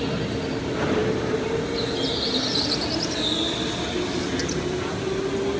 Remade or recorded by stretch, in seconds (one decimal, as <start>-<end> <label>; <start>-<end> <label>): 0.0-5.6 recorded